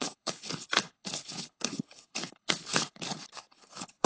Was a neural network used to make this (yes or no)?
yes